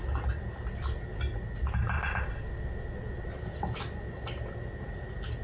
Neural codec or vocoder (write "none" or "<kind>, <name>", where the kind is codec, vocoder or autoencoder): none